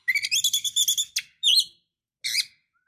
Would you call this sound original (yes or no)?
yes